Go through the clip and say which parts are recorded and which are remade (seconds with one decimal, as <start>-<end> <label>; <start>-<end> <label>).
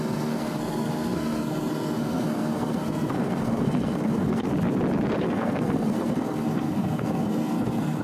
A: 0.0-4.5 remade; 4.5-5.2 recorded; 5.2-8.0 remade